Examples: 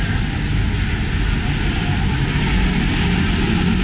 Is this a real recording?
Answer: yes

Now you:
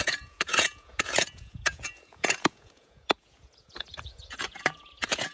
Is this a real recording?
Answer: no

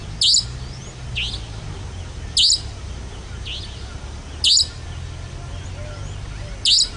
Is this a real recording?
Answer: yes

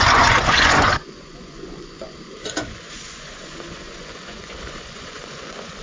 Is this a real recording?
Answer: no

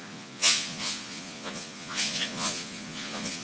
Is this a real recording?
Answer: no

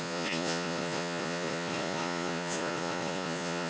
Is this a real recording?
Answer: no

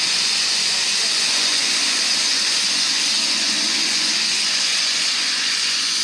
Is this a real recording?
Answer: no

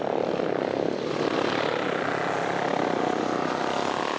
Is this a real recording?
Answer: yes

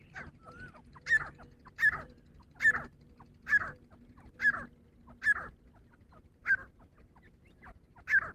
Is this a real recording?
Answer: yes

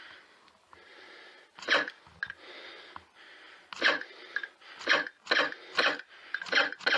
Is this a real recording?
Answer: yes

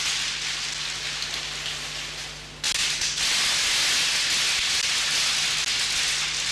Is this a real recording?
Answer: yes